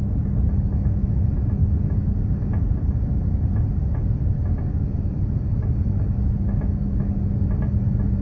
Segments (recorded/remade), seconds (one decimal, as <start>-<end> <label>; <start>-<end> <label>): 0.0-8.2 recorded

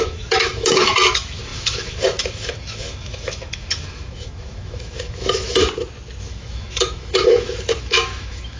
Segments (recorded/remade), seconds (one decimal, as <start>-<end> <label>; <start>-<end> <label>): 0.0-5.6 remade; 5.6-6.2 recorded; 6.2-8.6 remade

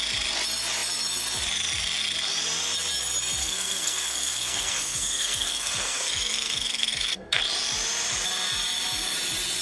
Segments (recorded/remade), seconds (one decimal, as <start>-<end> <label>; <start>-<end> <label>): 0.0-3.4 recorded; 3.4-7.4 remade; 7.4-9.6 recorded

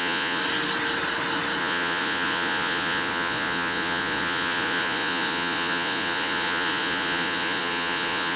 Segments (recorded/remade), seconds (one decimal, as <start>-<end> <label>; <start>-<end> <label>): 0.0-0.4 remade; 0.4-1.6 recorded; 1.6-8.4 remade